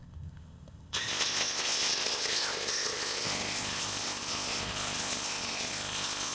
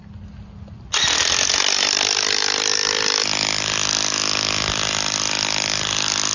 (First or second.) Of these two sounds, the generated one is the first